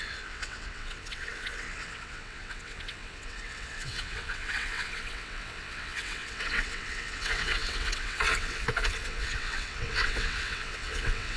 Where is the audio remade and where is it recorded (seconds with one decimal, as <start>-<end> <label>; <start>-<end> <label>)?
0.0-11.4 remade